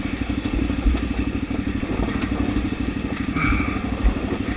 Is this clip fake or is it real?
real